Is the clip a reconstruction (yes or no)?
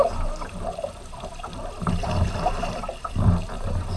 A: yes